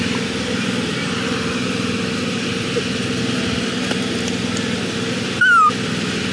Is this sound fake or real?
real